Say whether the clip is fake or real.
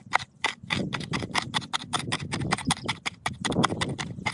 fake